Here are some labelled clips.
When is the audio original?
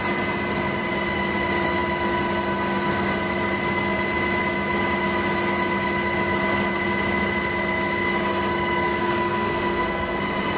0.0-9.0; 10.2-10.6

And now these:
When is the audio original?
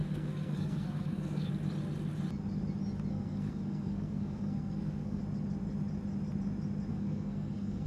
1.5-3.1; 5.2-6.9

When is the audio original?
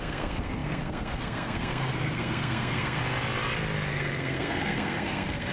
3.0-3.9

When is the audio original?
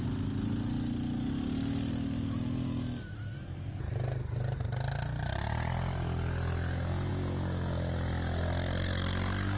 0.0-9.6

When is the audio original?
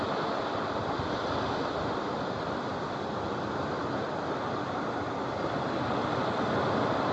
0.0-7.1